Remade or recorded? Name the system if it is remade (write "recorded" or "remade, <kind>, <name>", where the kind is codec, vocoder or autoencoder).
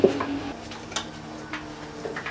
recorded